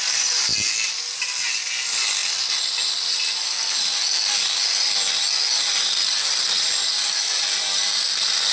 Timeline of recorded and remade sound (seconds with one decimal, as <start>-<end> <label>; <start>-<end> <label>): 0.0-8.5 recorded